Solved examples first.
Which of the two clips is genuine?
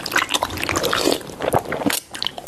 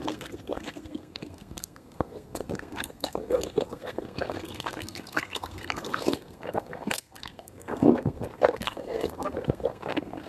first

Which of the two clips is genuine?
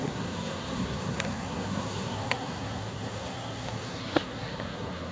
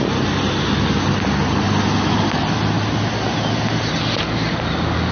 second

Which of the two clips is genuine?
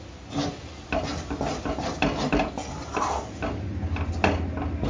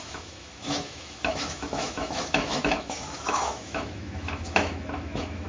first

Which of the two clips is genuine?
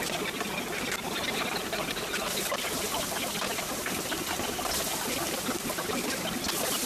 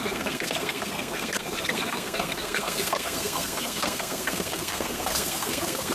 first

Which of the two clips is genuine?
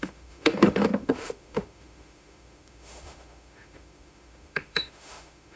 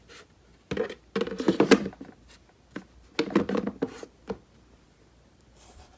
second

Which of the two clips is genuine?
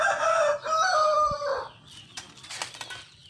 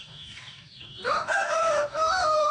first